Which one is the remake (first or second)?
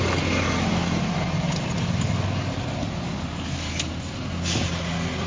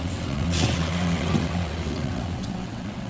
second